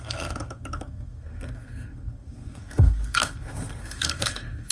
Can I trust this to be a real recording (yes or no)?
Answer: no